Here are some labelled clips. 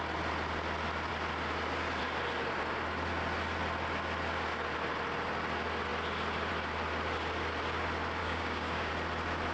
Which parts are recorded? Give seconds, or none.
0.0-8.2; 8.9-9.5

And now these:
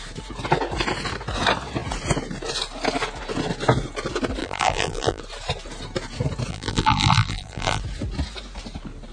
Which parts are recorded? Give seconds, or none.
0.0-4.4; 5.2-6.5; 7.8-9.1

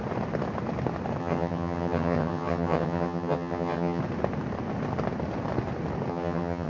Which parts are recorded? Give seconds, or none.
0.0-1.2; 4.0-6.1

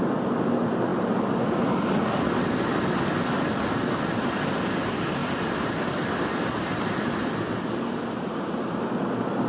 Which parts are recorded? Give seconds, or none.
0.0-9.5

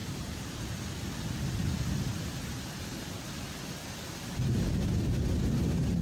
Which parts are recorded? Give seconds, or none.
0.7-2.1; 4.7-6.0